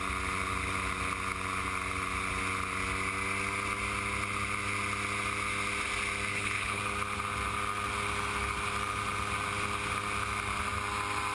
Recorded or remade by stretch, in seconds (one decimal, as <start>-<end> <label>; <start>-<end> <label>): 0.0-6.3 recorded; 6.3-6.8 remade; 6.8-11.3 recorded